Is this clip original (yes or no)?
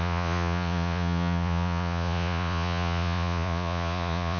no